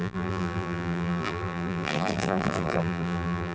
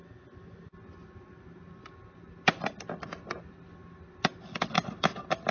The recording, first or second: second